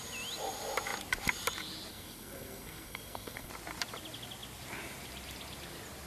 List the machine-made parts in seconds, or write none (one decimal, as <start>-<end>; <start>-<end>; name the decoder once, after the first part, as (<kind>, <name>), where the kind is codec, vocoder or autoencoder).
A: 1.9-3.5 (codec, SNAC)

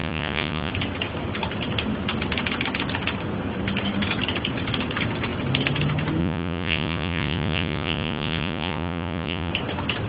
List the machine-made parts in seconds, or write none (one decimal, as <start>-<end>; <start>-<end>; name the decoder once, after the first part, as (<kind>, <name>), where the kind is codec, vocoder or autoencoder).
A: 0.0-0.7 (vocoder, Vocos); 6.2-9.5

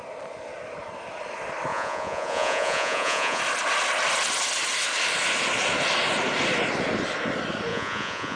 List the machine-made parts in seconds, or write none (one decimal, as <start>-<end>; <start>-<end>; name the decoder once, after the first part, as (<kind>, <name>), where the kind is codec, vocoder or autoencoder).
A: 1.7-3.4 (vocoder, Vocos); 7.7-8.4

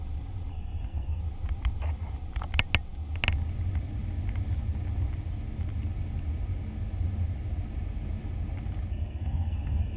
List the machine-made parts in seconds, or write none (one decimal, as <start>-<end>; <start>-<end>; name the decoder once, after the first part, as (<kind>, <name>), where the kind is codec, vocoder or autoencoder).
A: 0.5-1.2 (codec, SNAC); 8.9-10.0

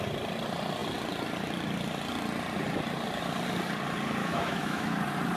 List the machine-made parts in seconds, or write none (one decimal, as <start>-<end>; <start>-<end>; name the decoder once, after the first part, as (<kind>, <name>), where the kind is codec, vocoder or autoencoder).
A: 4.2-5.0 (autoencoder, DAC-VAE)

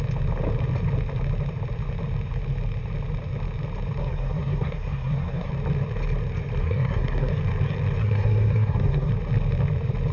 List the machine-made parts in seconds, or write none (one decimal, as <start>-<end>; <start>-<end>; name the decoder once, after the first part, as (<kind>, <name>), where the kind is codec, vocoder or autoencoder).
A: 4.0-5.5 (codec, SNAC); 6.6-7.3; 8.0-9.1

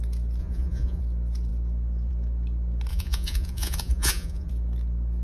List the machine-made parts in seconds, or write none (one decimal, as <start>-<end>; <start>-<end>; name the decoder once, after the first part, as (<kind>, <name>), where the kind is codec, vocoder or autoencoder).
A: 0.4-1.0 (vocoder, Vocos); 2.9-4.5